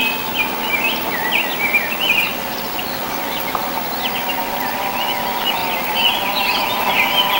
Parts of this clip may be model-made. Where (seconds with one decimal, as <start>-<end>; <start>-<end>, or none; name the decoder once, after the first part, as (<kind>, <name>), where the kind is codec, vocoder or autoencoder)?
2.0-3.6 (vocoder, BigVGAN v2); 4.4-5.6; 6.1-7.4